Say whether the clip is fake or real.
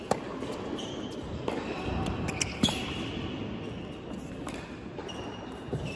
real